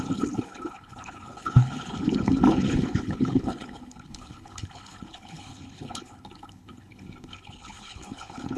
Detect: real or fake fake